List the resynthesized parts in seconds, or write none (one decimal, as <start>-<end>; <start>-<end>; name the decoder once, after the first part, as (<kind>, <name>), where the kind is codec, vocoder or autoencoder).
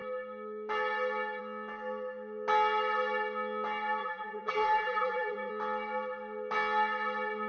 4.0-5.5 (vocoder, BigVGAN v2)